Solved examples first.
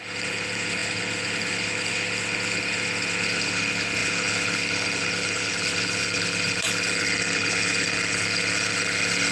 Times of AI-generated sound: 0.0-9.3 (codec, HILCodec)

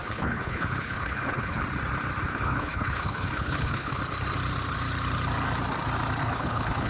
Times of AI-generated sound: 0.0-1.6 (codec, HILCodec); 2.3-4.0; 6.2-6.9

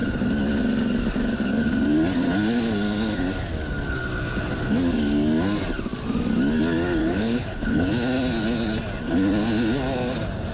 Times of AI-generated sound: 7.0-7.9 (codec, HILCodec)

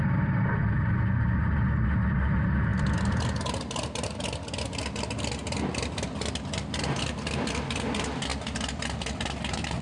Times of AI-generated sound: none